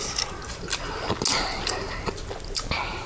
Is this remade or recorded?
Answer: recorded